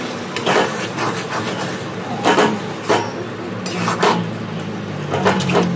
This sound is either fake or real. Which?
real